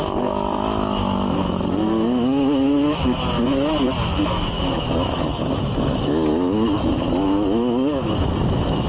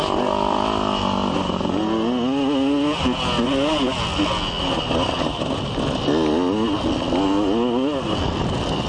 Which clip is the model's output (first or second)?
first